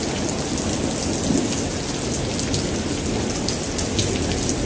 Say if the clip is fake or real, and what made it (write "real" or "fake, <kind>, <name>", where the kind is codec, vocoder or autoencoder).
real